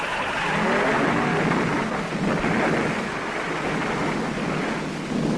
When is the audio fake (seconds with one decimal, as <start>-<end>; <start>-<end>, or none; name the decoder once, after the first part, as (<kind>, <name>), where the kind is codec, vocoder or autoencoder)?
none